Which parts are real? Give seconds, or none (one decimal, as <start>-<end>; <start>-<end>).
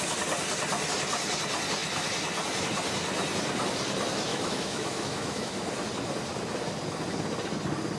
0.0-4.3; 5.7-8.0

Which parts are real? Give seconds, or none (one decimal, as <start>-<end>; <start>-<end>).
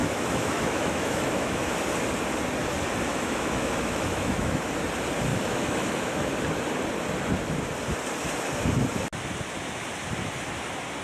1.8-3.1; 4.6-5.3; 6.3-11.0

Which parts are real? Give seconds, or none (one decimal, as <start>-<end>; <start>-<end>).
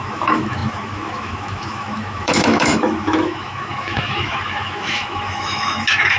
none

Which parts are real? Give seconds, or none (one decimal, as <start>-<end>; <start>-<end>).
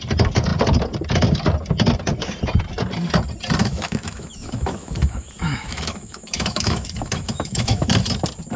0.0-3.6; 7.9-8.6